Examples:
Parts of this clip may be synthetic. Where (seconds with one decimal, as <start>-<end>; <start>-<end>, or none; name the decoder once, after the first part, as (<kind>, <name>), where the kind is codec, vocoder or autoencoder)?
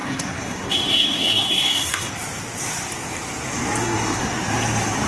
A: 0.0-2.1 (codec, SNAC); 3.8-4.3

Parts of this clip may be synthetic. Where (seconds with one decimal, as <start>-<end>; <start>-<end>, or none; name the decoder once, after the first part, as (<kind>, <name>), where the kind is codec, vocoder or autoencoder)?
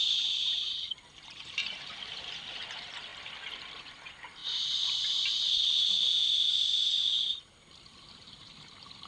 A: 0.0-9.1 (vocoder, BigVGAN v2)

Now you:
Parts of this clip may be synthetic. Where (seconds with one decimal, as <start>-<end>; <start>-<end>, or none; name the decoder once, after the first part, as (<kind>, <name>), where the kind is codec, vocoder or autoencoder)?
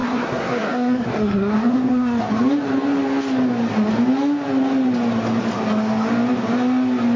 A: 0.0-2.2 (codec, SNAC)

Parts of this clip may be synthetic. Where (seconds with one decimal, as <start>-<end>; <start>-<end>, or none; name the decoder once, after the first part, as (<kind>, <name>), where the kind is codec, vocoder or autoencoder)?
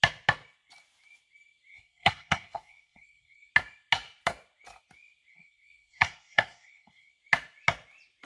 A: 1.7-3.5 (codec, SNAC); 5.3-7.1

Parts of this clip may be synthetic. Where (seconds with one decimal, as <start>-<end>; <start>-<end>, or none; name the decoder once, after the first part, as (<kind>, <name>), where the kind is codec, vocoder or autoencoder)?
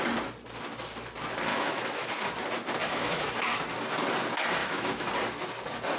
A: 1.5-2.3 (autoencoder, DAC-VAE); 2.8-3.6; 4.6-5.1